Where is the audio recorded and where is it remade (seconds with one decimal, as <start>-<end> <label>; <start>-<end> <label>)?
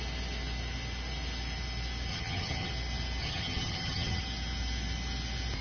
0.0-2.1 recorded; 2.1-2.7 remade; 2.7-3.2 recorded; 3.2-4.2 remade; 4.2-5.6 recorded